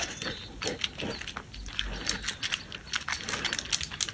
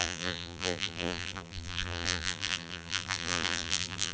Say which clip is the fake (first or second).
second